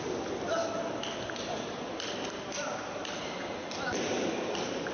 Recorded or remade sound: recorded